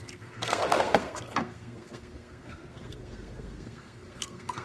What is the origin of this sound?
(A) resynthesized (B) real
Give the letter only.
A